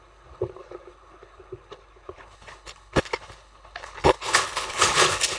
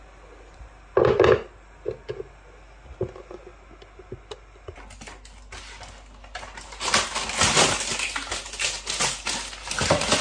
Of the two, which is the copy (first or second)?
first